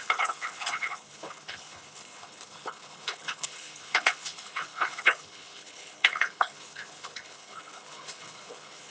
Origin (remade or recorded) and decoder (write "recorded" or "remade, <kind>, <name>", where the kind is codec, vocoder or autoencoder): remade, codec, HILCodec